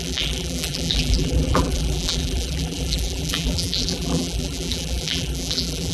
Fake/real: fake